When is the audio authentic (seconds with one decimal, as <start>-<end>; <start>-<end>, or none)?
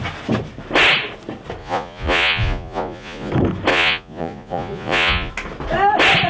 0.0-1.6; 3.3-3.7; 5.3-6.3